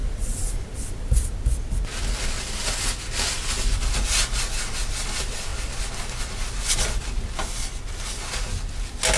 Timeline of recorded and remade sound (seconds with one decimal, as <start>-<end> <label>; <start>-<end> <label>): 0.0-9.2 recorded